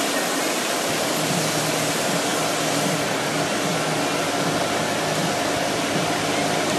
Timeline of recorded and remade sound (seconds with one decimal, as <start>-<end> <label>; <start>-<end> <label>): 0.0-6.8 recorded